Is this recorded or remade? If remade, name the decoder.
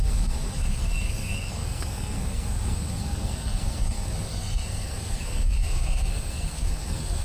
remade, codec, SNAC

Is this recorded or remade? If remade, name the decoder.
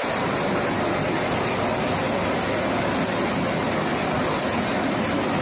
recorded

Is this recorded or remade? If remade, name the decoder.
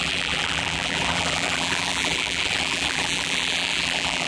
remade, vocoder, BigVGAN v2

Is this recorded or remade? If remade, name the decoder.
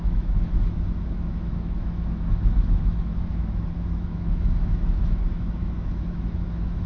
remade, autoencoder, DAC-VAE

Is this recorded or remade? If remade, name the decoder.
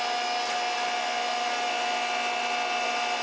recorded